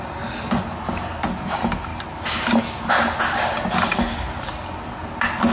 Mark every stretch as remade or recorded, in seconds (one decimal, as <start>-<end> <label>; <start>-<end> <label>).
0.0-5.5 recorded